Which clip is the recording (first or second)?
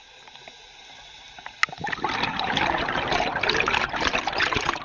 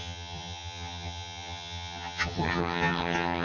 first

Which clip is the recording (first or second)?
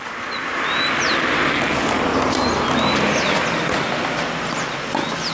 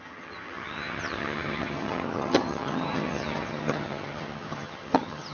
first